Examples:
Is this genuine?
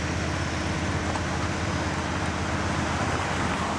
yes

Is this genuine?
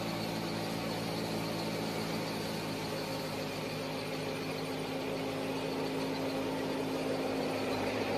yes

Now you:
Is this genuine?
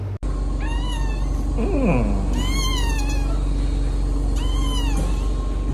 yes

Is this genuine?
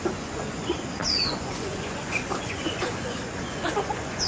no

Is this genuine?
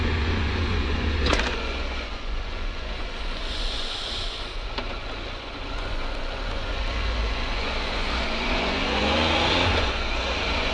no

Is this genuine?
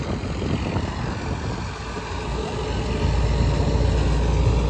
yes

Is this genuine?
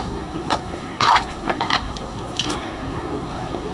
no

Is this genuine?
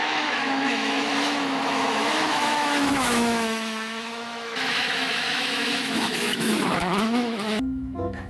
no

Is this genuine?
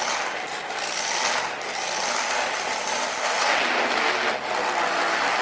yes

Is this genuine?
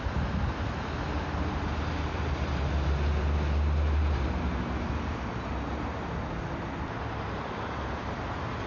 yes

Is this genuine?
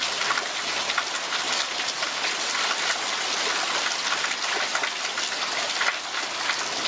yes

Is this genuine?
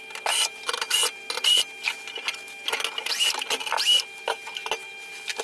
yes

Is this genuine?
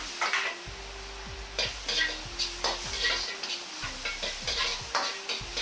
yes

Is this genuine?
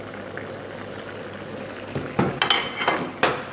yes